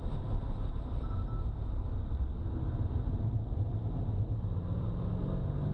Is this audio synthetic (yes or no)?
no